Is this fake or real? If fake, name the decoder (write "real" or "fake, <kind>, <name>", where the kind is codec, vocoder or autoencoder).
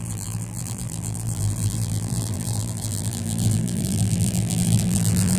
fake, vocoder, BigVGAN v2